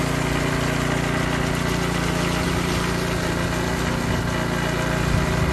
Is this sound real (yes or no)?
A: yes